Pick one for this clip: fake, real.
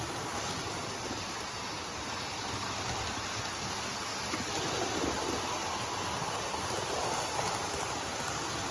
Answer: real